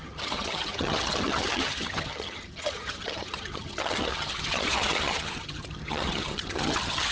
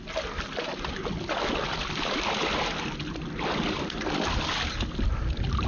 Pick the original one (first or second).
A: second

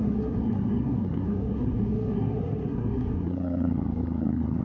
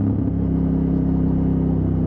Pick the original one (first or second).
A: second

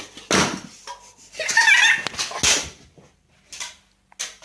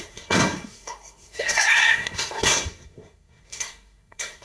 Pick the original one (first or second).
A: first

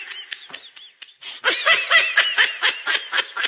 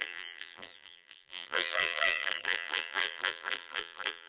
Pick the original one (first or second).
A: first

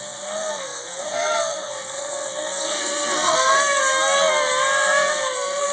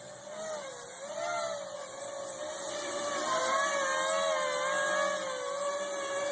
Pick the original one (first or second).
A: second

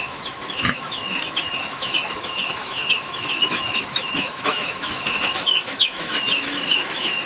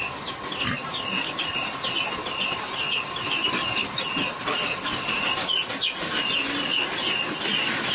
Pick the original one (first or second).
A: second